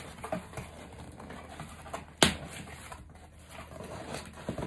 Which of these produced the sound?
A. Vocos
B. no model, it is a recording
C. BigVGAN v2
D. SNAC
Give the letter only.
B